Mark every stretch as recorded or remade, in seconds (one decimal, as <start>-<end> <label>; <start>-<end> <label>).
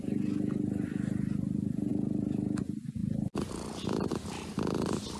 0.0-3.0 recorded; 3.0-5.2 remade